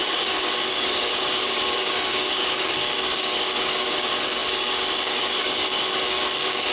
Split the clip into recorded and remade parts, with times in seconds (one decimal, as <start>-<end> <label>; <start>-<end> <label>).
0.0-6.7 remade